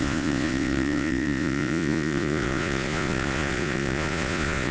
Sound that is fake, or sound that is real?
fake